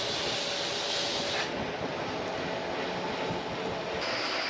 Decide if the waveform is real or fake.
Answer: real